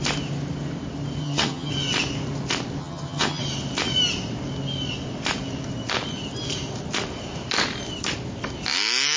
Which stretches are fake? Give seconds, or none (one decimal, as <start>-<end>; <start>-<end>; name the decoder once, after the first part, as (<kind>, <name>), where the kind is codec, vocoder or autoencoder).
1.2-1.7 (vocoder, HiFi-GAN); 2.8-3.4